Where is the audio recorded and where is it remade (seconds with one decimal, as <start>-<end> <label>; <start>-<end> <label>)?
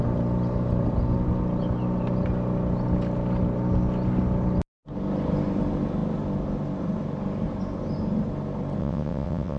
0.0-8.8 recorded; 8.8-9.6 remade